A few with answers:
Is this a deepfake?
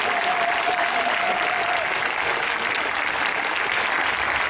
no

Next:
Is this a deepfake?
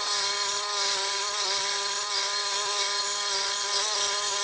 no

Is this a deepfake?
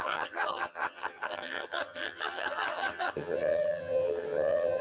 yes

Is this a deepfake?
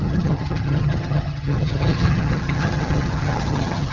yes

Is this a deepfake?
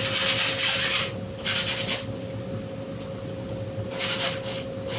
no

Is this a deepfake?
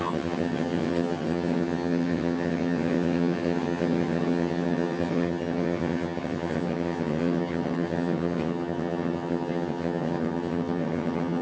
yes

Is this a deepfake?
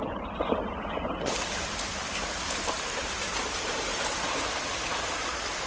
no